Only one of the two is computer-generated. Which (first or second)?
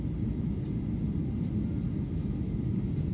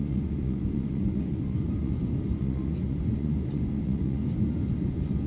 second